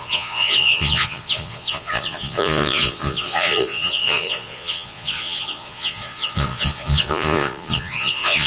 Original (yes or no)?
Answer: no